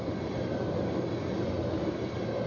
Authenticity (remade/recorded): recorded